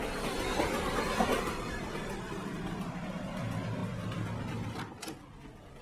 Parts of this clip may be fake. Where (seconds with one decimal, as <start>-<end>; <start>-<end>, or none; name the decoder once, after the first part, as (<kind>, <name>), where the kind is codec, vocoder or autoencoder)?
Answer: 1.3-3.1 (vocoder, BigVGAN v2)